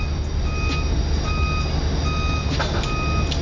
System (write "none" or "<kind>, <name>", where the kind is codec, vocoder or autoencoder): none